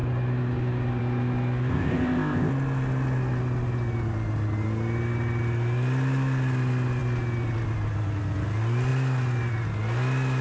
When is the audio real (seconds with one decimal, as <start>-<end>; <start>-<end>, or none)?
0.0-1.7; 2.5-10.4